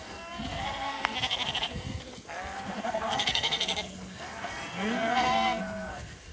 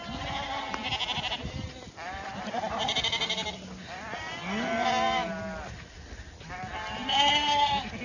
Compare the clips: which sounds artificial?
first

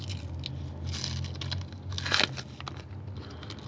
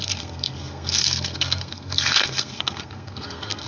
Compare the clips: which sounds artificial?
second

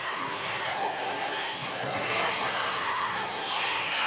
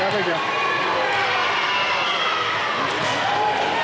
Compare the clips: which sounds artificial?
first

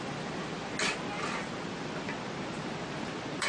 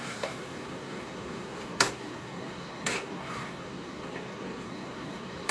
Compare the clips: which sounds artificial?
second